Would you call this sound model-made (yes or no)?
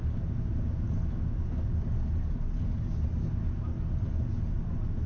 no